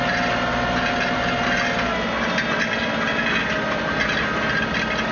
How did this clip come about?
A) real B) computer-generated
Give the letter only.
A